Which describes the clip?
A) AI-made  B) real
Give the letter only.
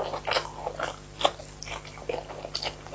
B